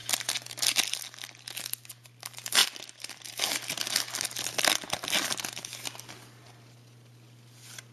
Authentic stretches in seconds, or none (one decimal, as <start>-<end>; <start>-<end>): 0.6-2.6; 3.3-7.9